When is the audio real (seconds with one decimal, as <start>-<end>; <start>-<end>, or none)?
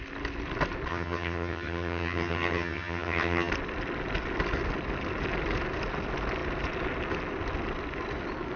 0.0-0.9; 3.5-8.6